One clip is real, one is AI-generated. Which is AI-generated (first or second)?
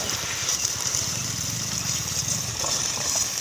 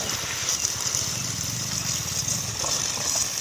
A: first